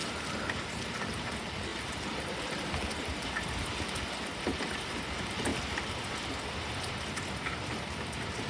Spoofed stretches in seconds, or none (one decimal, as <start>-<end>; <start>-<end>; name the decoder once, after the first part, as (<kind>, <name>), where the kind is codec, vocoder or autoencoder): 1.7-2.5 (vocoder, BigVGAN v2)